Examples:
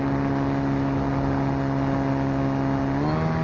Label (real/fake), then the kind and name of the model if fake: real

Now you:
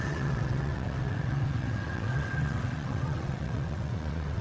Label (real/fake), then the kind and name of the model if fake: fake, vocoder, WaveNeXt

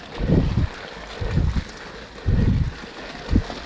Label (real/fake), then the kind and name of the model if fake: real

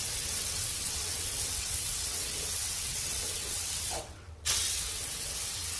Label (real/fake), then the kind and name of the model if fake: fake, vocoder, WaveNeXt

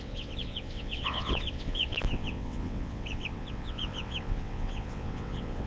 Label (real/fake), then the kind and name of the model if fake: fake, vocoder, WaveNeXt